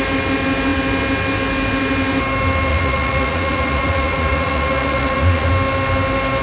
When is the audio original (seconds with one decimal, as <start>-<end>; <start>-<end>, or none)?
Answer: 0.0-2.7; 5.5-6.4